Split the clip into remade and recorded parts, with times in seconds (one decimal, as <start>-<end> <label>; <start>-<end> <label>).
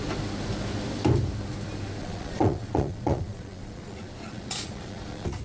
0.0-2.0 recorded; 2.0-5.4 remade